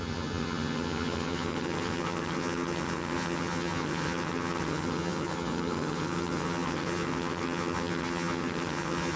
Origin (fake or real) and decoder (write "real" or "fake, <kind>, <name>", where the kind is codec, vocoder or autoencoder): fake, vocoder, HiFi-GAN